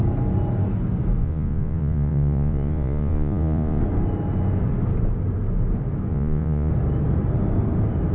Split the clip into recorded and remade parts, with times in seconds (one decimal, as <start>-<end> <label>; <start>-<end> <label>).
0.0-1.2 recorded; 1.2-3.8 remade; 3.8-6.1 recorded; 6.1-6.7 remade; 6.7-8.1 recorded